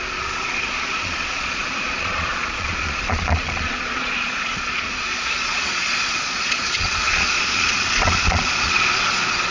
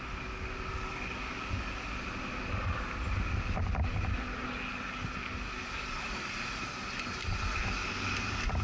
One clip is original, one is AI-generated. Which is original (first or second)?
second